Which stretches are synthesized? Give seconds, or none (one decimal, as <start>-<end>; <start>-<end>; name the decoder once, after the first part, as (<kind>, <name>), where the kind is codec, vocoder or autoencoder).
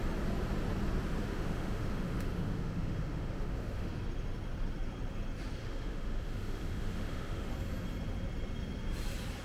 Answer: 1.3-3.9 (autoencoder, DAC-VAE); 5.6-7.5